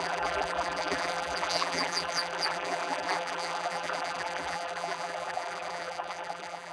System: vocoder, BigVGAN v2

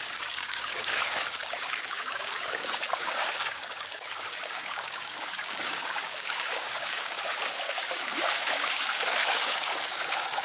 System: codec, DAC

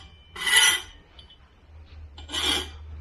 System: none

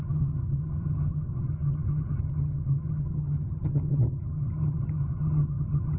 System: vocoder, HiFi-GAN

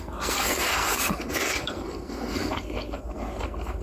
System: codec, SNAC